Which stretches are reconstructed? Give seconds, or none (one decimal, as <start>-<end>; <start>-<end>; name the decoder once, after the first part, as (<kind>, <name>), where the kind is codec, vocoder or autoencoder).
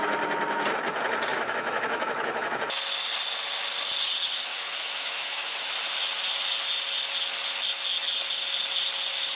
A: 1.3-2.6 (autoencoder, DAC-VAE); 4.5-5.7